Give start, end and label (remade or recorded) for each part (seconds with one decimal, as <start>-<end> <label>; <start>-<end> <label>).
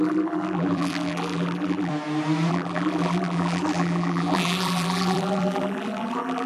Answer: 0.0-1.9 remade; 1.9-2.5 recorded; 2.5-6.5 remade